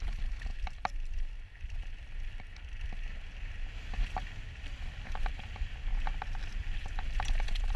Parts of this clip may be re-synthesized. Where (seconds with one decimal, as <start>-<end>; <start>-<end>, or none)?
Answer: none